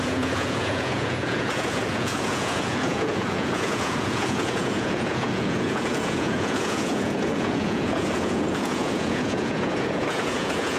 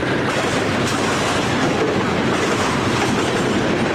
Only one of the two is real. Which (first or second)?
second